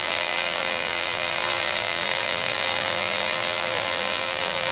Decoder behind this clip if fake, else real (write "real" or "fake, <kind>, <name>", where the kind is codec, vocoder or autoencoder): fake, vocoder, BigVGAN v2